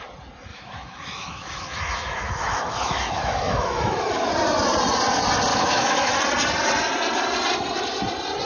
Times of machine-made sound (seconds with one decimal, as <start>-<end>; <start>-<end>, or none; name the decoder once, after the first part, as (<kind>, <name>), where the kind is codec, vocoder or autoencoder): 0.5-4.3 (autoencoder, DAC-VAE); 5.5-6.1